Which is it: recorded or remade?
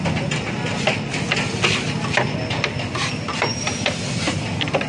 recorded